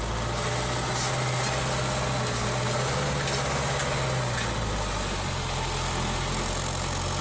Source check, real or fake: real